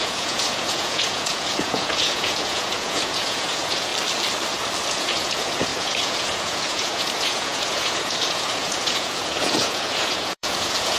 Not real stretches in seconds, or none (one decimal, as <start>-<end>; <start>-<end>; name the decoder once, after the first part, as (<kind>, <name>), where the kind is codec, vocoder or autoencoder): 0.0-3.9 (vocoder, Vocos); 4.9-11.0